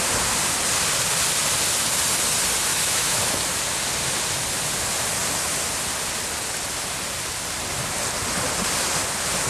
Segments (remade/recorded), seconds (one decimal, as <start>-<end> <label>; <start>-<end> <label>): 0.0-2.7 recorded; 2.7-3.2 remade; 3.2-9.5 recorded